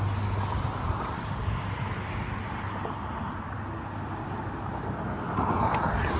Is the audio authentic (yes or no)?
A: yes